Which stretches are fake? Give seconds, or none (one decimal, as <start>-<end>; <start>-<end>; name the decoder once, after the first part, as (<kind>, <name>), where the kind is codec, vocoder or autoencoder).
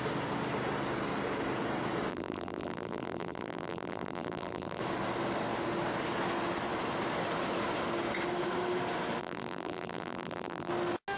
2.1-4.8 (vocoder, BigVGAN v2); 9.2-10.7